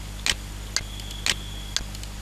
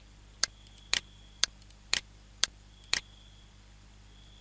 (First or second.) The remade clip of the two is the second